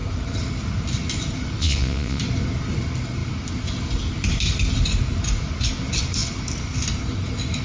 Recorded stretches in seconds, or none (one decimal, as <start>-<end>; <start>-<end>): 0.0-1.6; 2.2-7.6